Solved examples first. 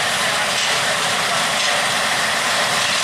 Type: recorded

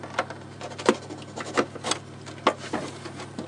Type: recorded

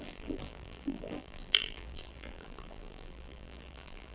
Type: remade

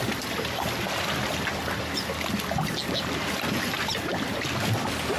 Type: recorded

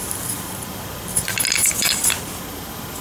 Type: recorded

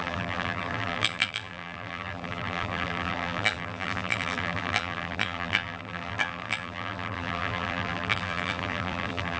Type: remade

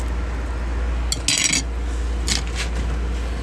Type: recorded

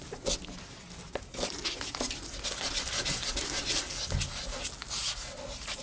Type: recorded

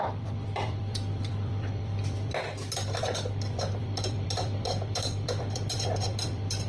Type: remade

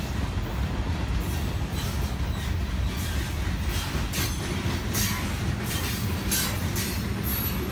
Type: recorded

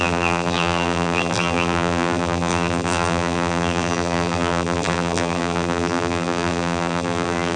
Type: remade